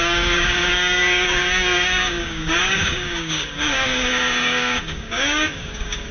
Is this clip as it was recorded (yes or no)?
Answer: no